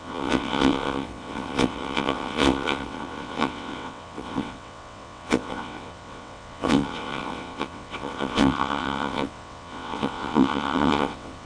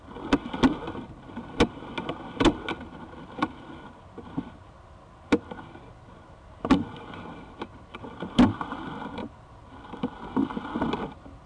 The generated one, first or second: first